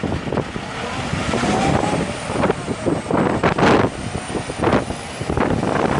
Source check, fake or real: real